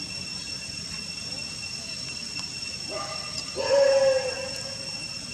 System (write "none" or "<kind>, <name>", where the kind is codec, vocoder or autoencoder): none